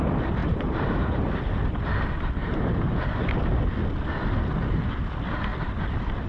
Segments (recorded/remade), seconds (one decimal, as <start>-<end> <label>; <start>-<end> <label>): 0.0-0.4 recorded; 0.4-1.2 remade; 1.2-2.4 recorded; 2.4-2.9 remade; 2.9-6.3 recorded